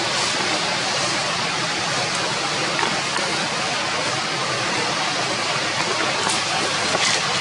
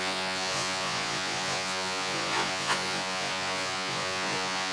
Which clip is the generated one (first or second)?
second